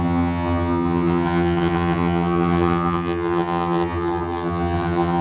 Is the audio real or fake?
fake